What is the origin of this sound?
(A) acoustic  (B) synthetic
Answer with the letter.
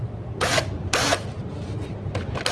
A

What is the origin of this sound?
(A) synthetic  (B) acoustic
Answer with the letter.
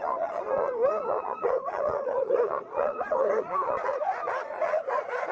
A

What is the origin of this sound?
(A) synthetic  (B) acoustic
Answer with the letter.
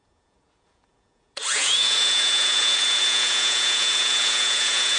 A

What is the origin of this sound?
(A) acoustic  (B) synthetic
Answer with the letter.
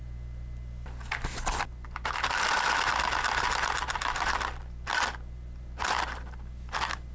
A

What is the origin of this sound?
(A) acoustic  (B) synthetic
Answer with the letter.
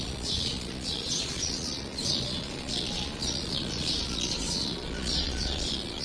B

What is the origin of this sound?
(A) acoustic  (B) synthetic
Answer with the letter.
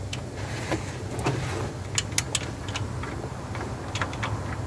A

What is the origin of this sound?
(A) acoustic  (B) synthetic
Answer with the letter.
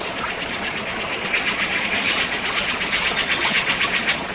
B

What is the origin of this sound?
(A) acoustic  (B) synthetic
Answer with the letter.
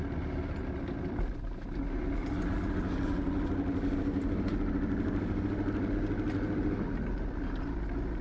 A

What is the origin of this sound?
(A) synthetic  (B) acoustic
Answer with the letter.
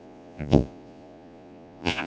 A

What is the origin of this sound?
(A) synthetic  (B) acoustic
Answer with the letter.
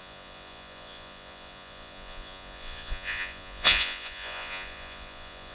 A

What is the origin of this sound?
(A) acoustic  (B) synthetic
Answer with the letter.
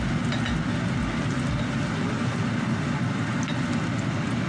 A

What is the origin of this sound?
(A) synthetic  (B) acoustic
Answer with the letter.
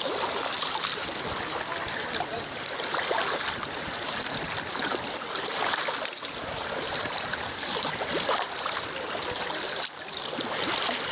B